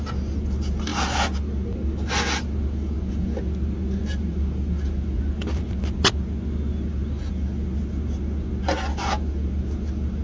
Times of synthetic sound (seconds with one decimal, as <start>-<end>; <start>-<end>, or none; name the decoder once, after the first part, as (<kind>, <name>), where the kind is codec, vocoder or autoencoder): 4.0-7.3 (vocoder, BigVGAN v2)

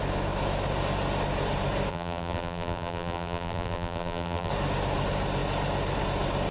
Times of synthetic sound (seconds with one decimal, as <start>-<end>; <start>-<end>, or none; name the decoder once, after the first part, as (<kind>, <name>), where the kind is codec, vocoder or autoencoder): 1.9-4.5 (vocoder, BigVGAN v2)